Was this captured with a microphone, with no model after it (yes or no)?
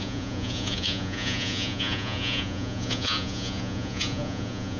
no